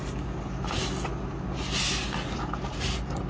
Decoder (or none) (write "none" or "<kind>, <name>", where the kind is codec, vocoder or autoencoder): none